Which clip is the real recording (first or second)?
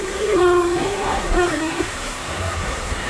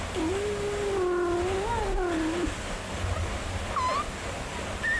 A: second